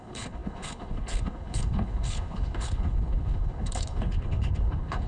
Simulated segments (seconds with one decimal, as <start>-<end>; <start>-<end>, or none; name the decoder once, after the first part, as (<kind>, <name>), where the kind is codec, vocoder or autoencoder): 0.0-5.1 (codec, HILCodec)